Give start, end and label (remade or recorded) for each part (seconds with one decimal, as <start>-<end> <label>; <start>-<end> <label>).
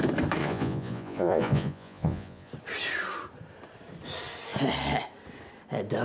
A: 0.0-0.4 recorded; 0.4-2.5 remade; 2.5-6.0 recorded